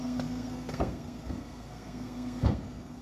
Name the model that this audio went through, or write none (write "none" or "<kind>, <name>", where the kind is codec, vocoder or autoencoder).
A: codec, SNAC